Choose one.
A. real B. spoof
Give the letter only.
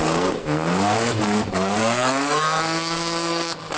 B